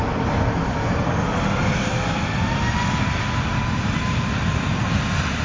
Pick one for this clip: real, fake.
real